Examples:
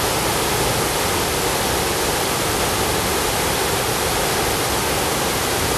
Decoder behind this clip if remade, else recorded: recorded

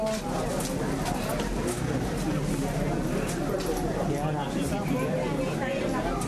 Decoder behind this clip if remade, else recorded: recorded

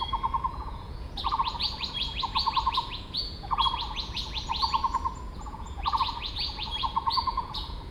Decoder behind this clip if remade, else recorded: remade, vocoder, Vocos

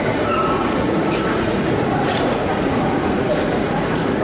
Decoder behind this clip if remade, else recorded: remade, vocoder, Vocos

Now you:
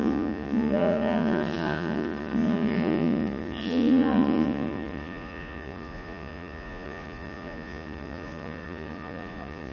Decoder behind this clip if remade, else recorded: remade, vocoder, Vocos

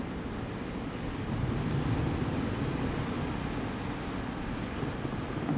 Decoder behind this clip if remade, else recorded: recorded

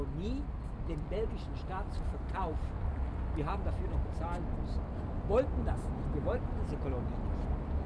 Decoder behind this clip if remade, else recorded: recorded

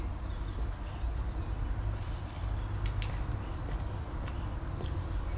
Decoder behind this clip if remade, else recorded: recorded